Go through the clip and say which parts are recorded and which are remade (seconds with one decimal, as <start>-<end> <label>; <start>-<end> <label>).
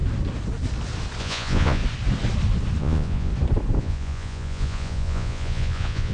0.0-1.2 recorded; 1.2-1.8 remade; 1.8-2.8 recorded; 2.8-3.3 remade; 3.3-3.8 recorded; 3.8-6.1 remade